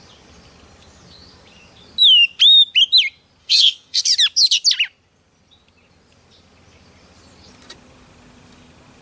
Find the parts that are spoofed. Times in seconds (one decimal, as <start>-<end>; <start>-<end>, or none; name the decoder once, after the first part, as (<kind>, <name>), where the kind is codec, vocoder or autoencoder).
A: 3.4-4.0 (codec, SNAC)